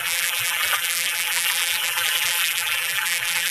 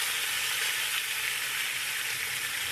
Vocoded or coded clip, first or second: first